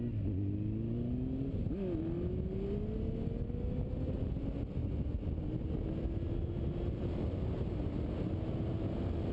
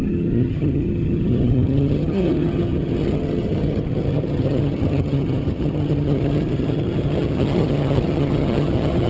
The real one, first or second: first